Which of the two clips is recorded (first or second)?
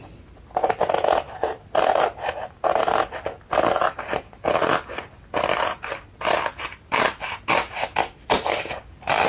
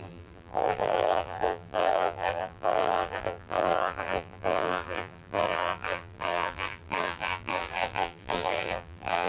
first